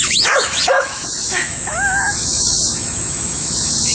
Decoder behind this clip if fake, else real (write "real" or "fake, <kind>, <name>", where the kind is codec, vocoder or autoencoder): fake, autoencoder, DAC-VAE